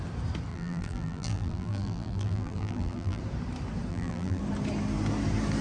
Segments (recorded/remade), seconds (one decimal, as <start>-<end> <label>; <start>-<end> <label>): 0.0-0.5 recorded; 0.5-3.2 remade; 3.2-3.9 recorded; 3.9-4.4 remade; 4.4-5.6 recorded